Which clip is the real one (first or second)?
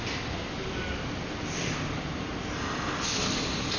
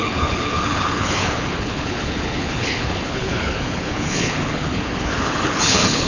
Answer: first